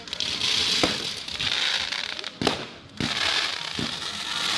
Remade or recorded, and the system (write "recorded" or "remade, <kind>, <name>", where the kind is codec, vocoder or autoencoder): recorded